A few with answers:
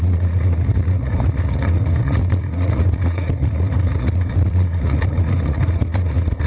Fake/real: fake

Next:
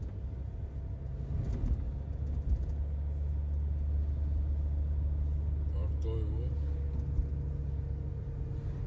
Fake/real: real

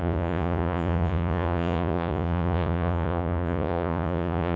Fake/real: fake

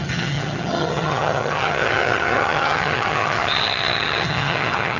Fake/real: fake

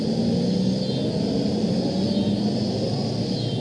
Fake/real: real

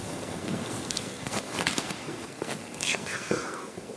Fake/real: fake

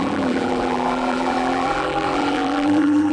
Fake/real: fake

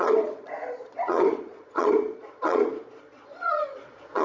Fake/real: fake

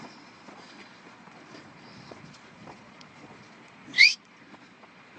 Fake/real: fake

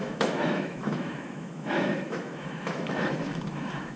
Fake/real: fake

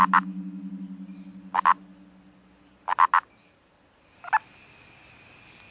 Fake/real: real